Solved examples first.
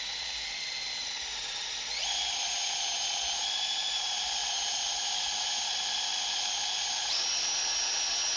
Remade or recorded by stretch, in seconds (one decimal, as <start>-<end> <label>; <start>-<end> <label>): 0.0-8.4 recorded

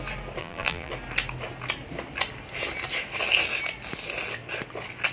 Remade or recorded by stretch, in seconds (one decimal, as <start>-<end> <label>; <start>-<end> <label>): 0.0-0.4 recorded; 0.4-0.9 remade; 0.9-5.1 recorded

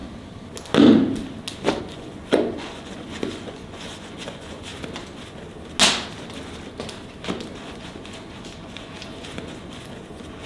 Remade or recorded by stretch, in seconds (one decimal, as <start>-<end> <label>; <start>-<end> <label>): 0.0-1.8 recorded; 1.8-4.7 remade; 4.7-7.6 recorded; 7.6-10.5 remade